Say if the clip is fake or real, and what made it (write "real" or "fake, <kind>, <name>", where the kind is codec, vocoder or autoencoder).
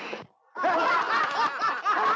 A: real